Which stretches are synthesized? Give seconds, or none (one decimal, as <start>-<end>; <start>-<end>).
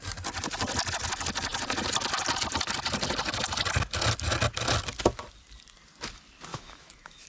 6.5-7.3